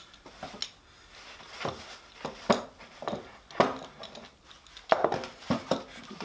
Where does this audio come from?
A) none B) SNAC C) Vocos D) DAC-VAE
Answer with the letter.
A